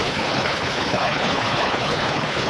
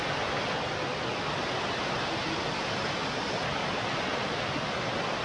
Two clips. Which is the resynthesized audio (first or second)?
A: first